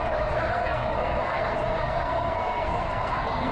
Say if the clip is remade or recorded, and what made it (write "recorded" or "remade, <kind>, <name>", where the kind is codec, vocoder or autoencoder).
remade, codec, SNAC